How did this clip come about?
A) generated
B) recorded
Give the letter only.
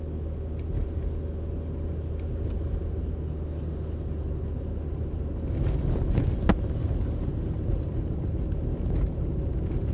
B